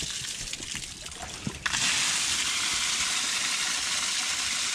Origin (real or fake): real